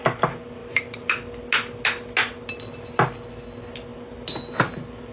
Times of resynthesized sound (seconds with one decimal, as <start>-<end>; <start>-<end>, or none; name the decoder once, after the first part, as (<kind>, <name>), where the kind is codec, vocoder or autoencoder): none